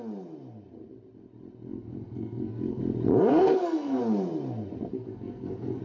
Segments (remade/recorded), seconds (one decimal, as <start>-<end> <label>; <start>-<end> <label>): 0.0-1.7 recorded; 1.7-2.8 remade; 2.8-3.3 recorded; 3.3-4.0 remade; 4.0-4.9 recorded; 4.9-5.8 remade